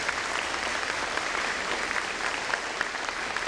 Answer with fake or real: fake